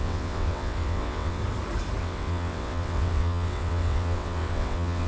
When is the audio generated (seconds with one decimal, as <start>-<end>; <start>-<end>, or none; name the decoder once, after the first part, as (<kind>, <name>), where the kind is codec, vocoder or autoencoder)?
0.0-1.4 (vocoder, WaveNeXt); 2.0-5.1